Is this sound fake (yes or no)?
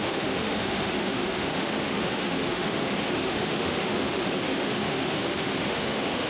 yes